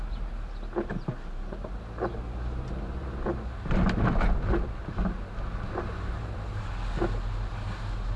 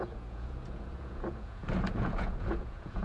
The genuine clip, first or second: first